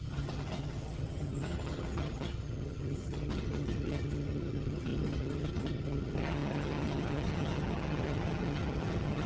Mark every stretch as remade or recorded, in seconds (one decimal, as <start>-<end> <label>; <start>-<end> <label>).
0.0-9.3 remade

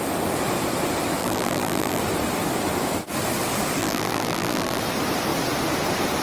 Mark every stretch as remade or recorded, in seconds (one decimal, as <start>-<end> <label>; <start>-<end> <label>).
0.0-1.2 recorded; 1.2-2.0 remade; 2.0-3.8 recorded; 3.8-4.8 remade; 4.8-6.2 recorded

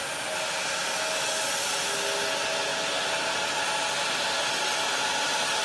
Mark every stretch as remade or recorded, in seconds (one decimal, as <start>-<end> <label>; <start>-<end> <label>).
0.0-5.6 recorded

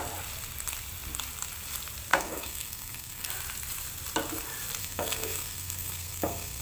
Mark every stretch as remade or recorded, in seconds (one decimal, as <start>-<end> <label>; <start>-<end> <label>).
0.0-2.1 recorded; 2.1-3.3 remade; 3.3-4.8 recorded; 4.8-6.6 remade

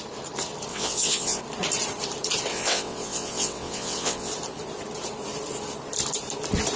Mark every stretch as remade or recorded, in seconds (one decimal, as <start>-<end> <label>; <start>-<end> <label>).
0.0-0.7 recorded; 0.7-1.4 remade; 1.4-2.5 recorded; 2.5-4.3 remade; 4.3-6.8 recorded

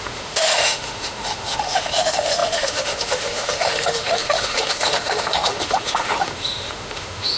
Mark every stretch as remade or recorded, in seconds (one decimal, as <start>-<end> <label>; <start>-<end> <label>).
0.0-7.4 remade